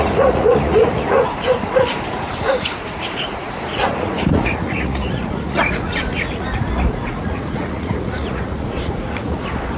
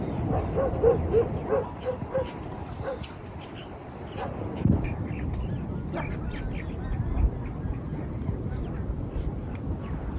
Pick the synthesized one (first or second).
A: first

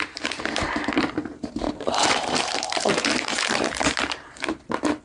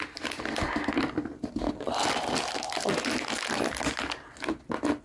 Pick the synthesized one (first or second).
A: first